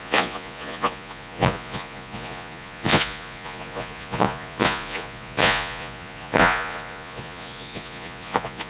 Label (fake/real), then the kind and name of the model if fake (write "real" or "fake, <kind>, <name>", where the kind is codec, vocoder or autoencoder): fake, vocoder, Vocos